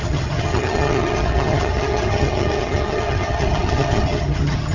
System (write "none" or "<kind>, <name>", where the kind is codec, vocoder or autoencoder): vocoder, HiFi-GAN